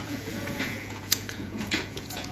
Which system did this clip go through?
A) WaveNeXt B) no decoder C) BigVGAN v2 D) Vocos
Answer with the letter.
D